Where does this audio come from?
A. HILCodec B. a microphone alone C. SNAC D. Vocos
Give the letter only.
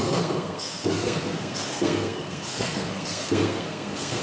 C